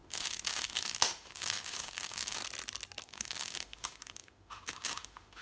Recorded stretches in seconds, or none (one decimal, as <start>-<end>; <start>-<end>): 2.4-3.0